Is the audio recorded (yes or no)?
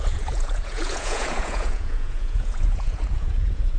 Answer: no